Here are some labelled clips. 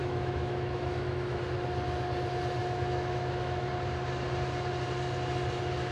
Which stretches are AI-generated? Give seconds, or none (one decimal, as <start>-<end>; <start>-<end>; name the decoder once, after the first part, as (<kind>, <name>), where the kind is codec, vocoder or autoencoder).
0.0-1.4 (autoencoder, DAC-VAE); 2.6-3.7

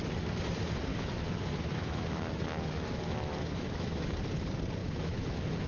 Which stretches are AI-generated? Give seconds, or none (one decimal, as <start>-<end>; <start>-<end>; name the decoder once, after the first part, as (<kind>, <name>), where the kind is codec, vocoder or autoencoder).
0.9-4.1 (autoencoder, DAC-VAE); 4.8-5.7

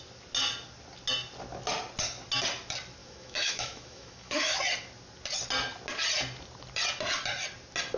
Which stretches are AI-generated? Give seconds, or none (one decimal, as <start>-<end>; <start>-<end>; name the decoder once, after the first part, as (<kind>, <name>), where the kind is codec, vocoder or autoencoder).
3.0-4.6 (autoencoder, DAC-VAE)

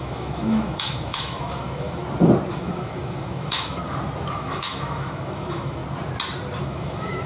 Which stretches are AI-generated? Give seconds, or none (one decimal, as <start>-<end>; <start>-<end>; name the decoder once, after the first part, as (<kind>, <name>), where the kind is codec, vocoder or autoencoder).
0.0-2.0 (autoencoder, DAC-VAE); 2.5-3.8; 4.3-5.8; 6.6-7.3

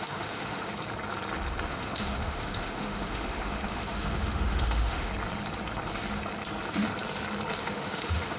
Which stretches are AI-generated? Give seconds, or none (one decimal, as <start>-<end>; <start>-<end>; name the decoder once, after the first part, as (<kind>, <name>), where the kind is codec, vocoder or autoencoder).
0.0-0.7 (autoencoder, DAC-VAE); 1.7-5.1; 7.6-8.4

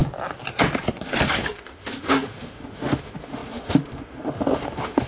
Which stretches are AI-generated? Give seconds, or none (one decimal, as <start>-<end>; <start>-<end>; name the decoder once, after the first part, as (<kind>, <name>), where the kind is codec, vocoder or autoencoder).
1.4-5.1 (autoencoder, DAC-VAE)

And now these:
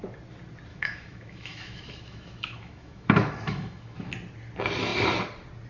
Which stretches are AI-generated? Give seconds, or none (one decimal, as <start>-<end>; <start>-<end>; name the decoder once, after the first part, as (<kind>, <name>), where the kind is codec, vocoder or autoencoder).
0.7-4.1 (autoencoder, DAC-VAE)